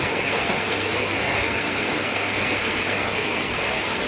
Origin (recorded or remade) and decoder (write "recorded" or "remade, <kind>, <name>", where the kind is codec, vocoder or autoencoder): remade, codec, SNAC